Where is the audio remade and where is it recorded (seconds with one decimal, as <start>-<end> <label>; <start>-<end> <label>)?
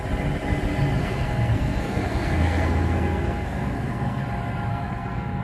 0.0-1.0 recorded; 1.0-4.2 remade; 4.2-4.7 recorded; 4.7-5.4 remade